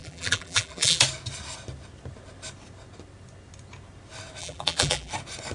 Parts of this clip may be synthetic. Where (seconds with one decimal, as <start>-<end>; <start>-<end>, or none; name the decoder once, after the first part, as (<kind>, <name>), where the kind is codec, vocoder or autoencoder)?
0.0-1.0 (vocoder, BigVGAN v2); 4.4-5.1